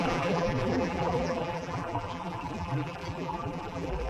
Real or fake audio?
fake